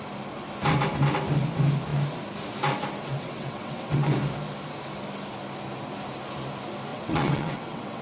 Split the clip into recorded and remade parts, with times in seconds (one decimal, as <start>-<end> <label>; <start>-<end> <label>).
0.0-3.0 recorded; 3.0-4.1 remade; 4.1-6.9 recorded; 6.9-8.0 remade